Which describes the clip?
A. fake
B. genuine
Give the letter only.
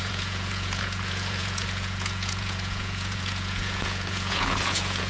A